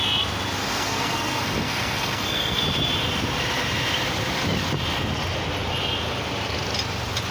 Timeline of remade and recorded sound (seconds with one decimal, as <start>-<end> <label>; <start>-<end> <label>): 0.0-0.6 recorded; 0.6-2.6 remade; 2.6-7.3 recorded